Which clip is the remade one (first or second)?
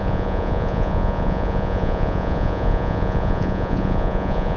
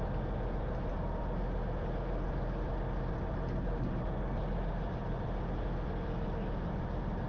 first